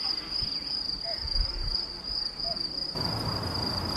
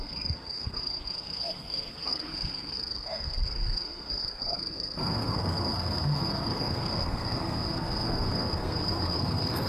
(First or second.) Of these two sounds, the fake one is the second